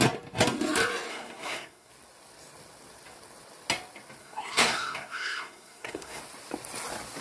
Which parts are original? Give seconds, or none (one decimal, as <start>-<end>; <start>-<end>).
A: 0.0-1.1; 1.9-4.2; 6.2-7.2